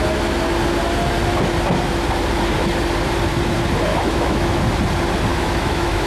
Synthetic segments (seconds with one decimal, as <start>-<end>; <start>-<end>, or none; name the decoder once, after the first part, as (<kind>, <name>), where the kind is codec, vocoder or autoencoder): 3.9-4.6 (autoencoder, DAC-VAE); 5.3-6.1